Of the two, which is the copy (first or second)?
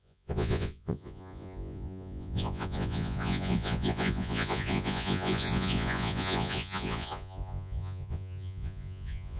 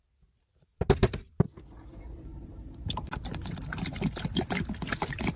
first